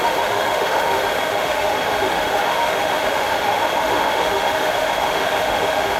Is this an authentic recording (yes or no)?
no